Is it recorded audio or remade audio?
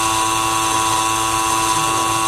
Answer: recorded